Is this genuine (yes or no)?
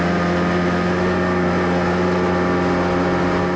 yes